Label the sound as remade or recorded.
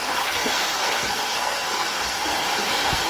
remade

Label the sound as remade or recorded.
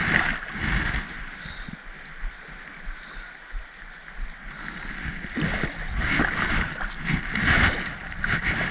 recorded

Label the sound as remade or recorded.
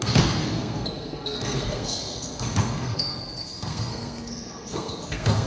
remade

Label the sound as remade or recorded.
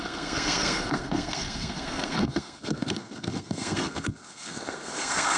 remade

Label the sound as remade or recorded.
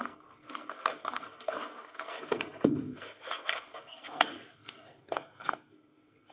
remade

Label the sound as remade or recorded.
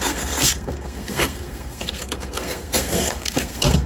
remade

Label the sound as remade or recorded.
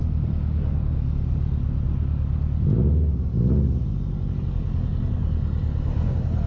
recorded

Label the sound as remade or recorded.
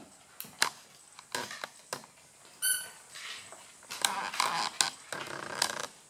recorded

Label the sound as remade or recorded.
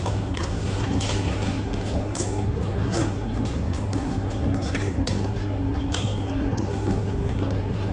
remade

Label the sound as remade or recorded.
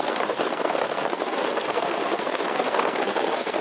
remade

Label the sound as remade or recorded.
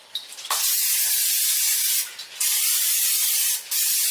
recorded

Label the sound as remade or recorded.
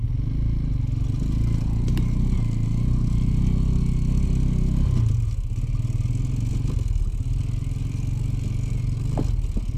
recorded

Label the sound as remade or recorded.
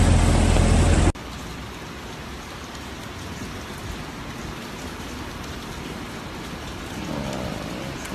recorded